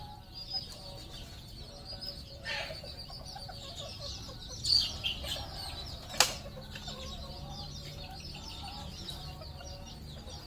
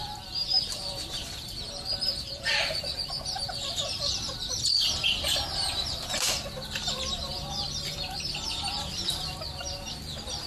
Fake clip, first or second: second